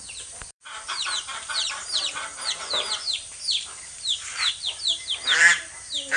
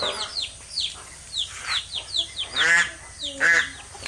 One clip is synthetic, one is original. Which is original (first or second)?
second